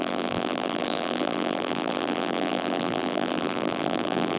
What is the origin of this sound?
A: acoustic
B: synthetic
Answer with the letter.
B